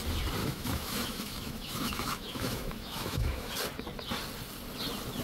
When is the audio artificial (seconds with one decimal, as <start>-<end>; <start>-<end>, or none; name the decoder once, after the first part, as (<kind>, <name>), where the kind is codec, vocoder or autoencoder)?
0.4-3.5 (autoencoder, DAC-VAE)